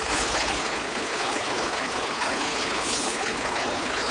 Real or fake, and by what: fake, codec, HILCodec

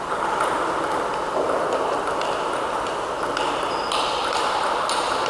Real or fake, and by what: real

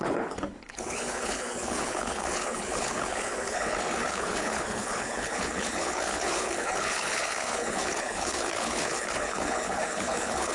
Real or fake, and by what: fake, codec, HILCodec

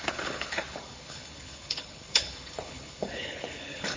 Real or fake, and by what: fake, codec, HILCodec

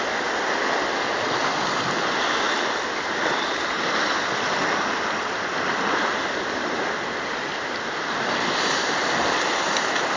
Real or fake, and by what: real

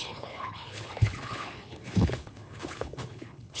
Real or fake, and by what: fake, codec, HILCodec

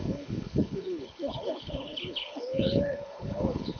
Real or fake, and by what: fake, codec, HILCodec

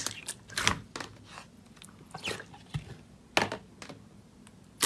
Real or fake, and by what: real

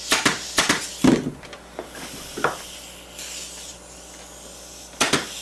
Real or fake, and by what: real